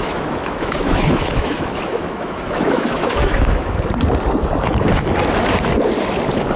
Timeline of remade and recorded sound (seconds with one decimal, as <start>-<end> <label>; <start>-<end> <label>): 0.0-3.9 remade; 3.9-6.6 recorded